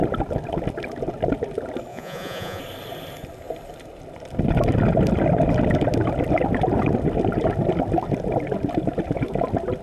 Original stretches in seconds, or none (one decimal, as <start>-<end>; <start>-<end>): 0.0-1.9; 2.6-9.8